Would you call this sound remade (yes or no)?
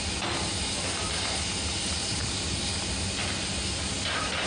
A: no